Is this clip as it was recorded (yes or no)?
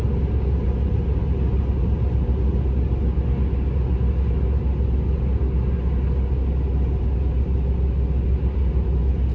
yes